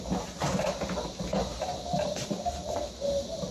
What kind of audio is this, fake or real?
real